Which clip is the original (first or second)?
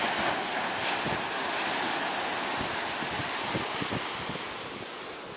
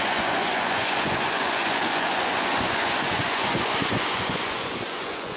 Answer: first